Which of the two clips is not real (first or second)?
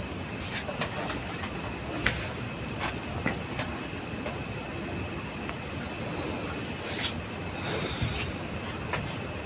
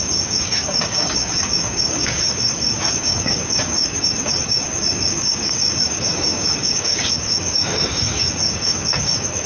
second